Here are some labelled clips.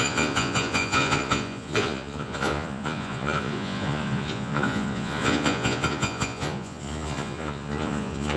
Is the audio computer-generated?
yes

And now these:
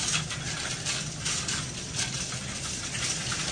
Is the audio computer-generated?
no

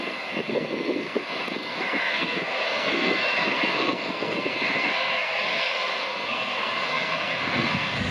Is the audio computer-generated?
yes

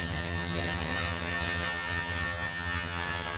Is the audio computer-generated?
yes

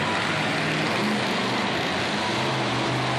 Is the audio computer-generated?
no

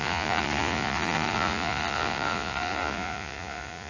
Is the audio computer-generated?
yes